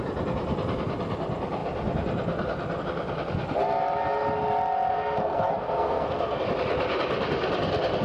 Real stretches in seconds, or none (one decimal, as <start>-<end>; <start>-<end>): 0.0-4.9; 6.4-8.0